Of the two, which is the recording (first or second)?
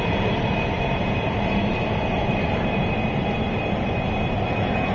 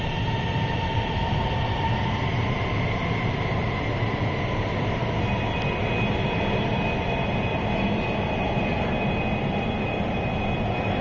second